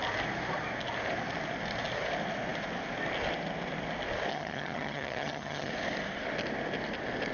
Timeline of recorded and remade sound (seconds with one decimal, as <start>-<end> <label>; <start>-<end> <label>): 0.0-4.3 recorded; 4.3-5.7 remade; 5.7-7.3 recorded